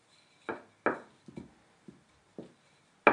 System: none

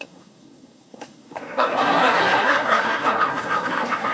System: codec, SNAC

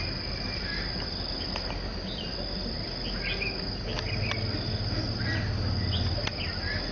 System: none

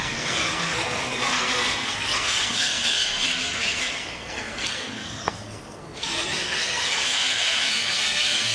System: codec, SNAC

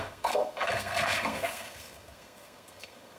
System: codec, SNAC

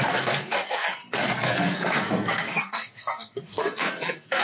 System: codec, SNAC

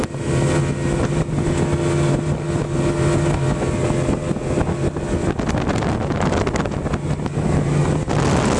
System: none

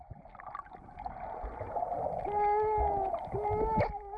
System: none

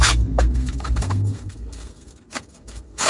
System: codec, SNAC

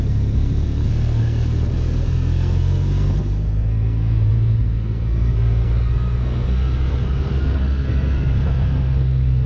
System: codec, SNAC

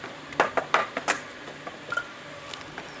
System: none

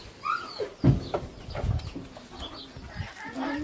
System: none